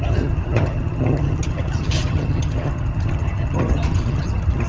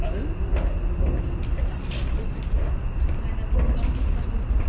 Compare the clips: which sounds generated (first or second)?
first